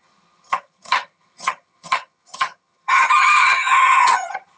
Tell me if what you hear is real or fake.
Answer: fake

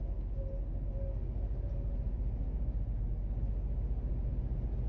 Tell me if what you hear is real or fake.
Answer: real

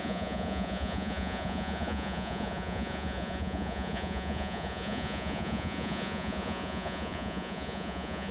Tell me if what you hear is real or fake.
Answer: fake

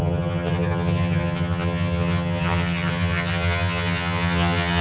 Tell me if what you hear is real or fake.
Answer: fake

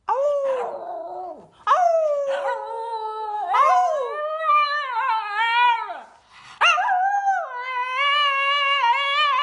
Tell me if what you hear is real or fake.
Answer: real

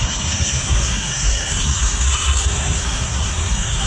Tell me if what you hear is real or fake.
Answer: fake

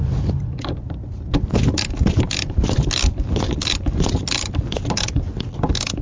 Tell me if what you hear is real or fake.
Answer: real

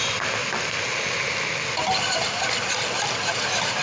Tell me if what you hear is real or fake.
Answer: real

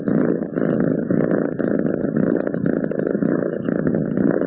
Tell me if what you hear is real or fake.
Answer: real